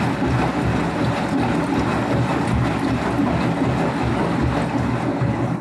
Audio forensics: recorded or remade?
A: recorded